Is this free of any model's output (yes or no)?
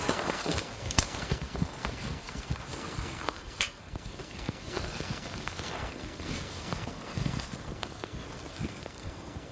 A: no